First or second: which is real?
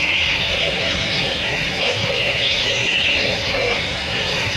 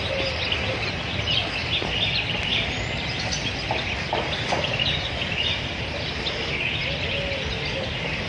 second